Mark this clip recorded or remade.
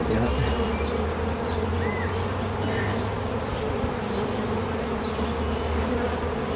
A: recorded